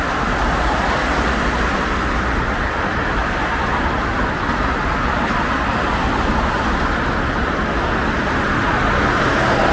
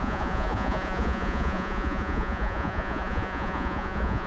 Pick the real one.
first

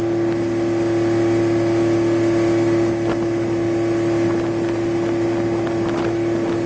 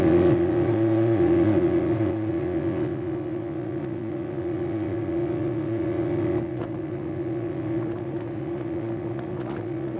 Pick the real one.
first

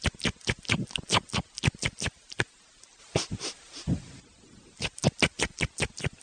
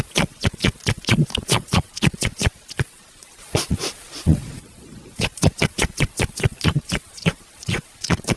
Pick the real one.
first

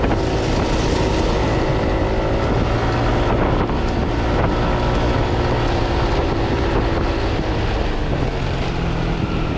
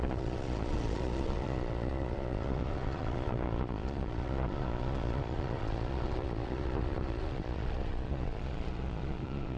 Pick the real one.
first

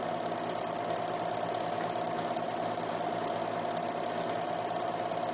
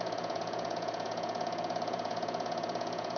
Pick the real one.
first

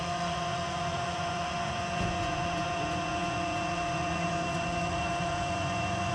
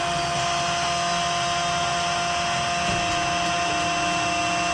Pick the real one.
second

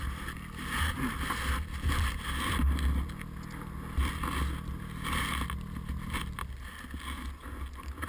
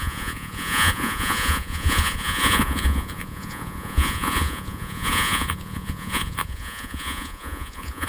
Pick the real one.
first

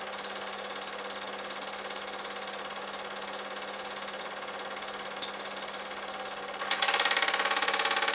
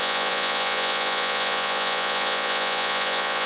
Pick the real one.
first